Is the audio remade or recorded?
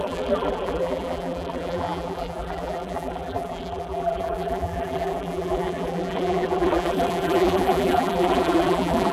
remade